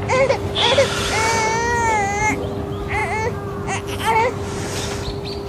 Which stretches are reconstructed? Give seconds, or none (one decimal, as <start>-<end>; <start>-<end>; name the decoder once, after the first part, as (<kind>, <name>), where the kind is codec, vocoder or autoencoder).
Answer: none